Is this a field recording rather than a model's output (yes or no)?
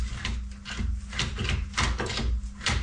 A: yes